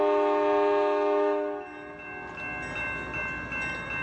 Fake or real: real